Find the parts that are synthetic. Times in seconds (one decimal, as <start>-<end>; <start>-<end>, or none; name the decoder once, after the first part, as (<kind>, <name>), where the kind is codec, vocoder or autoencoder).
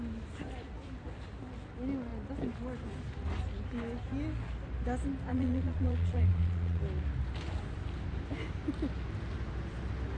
5.3-6.8 (vocoder, Vocos)